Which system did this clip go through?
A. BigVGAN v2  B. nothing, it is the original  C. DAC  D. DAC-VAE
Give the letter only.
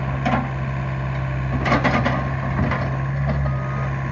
B